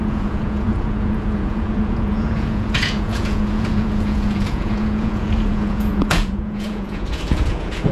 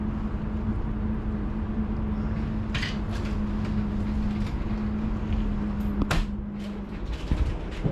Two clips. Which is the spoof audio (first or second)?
first